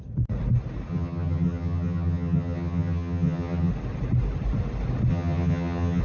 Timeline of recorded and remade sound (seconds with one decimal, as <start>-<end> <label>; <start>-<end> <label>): 0.0-0.9 recorded; 0.9-3.7 remade; 3.7-5.1 recorded; 5.1-6.0 remade